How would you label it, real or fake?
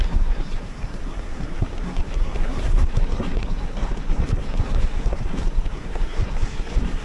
fake